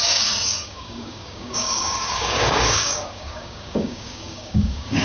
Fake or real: fake